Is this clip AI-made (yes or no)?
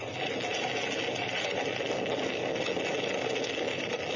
no